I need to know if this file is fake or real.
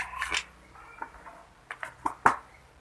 real